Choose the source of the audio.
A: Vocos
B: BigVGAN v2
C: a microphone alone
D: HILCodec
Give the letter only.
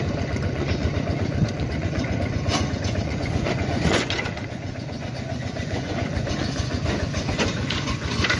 A